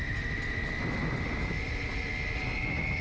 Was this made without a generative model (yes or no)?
yes